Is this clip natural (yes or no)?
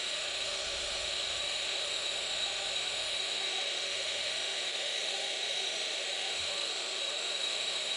no